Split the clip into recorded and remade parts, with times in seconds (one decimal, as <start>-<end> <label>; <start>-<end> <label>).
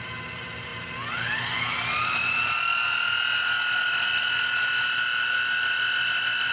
0.0-6.5 recorded